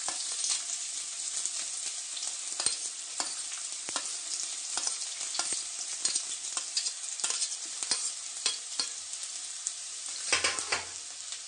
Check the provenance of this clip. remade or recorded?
recorded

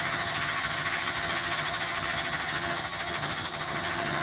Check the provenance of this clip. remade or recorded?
remade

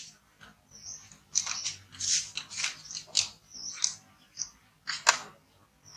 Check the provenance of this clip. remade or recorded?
recorded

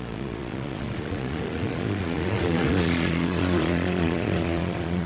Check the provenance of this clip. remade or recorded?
remade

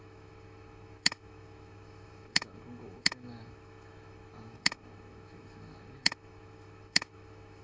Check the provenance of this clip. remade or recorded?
remade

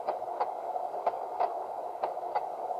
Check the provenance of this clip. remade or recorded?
remade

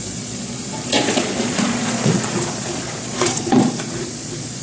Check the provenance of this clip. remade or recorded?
remade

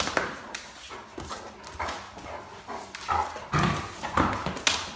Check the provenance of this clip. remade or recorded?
recorded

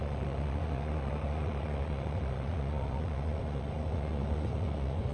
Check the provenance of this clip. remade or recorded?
remade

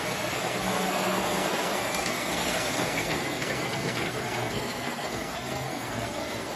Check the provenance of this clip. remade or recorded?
remade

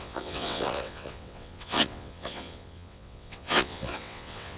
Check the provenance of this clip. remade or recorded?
remade